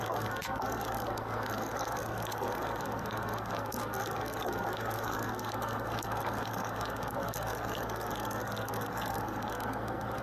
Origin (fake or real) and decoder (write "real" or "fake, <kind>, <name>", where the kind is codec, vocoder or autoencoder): fake, codec, SNAC